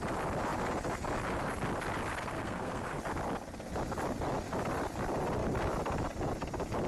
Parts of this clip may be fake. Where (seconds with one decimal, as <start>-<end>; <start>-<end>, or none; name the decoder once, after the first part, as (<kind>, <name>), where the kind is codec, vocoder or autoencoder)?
2.2-3.0 (codec, SNAC)